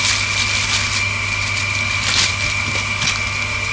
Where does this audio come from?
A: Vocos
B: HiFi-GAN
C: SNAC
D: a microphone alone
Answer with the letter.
D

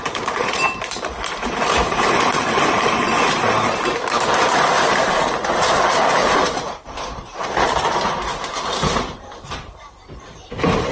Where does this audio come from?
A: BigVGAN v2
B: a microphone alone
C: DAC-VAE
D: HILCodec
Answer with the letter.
A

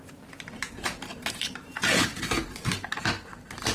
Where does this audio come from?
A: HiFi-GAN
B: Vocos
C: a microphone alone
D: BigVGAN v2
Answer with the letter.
D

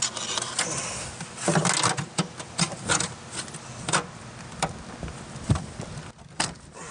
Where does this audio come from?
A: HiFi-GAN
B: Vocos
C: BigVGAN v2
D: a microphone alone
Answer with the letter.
D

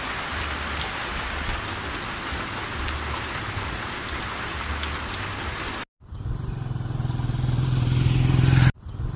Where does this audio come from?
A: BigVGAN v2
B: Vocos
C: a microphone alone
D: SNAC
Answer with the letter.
C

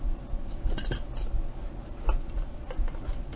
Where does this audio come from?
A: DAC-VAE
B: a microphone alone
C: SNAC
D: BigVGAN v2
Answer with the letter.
B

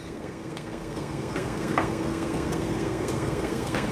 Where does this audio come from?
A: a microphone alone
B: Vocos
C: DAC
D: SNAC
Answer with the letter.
D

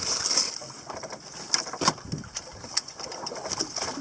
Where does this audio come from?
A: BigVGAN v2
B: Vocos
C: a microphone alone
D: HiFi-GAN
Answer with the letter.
C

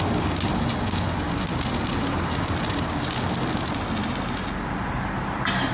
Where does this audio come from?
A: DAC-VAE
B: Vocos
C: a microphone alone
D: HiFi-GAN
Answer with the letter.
C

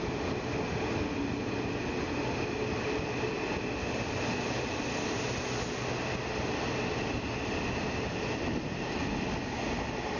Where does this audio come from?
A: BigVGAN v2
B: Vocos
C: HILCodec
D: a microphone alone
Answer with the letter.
D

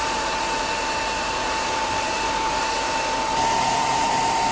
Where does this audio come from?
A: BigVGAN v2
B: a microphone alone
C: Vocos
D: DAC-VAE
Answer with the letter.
A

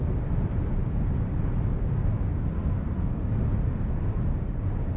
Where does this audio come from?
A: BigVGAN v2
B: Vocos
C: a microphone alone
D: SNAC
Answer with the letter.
C